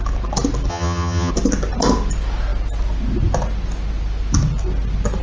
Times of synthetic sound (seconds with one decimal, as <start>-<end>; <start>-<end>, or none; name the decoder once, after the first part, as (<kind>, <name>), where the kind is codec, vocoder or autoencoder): 0.7-1.3 (vocoder, HiFi-GAN)